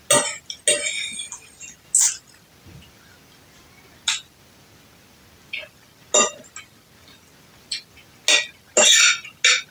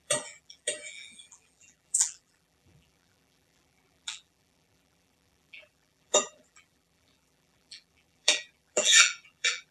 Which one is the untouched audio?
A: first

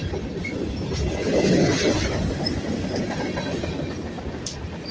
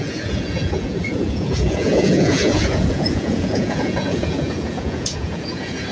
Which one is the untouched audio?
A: first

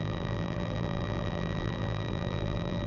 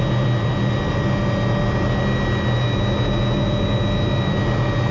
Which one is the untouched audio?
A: second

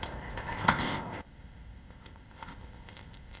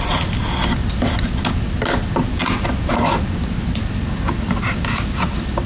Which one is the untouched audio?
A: second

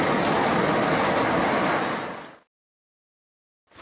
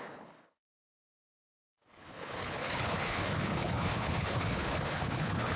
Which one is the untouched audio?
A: first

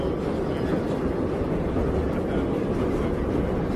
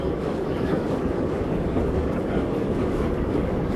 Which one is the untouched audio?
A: first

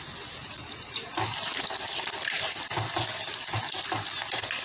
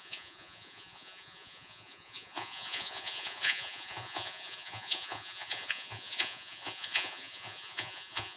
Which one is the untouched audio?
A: first